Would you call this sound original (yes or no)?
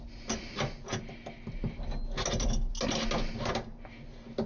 yes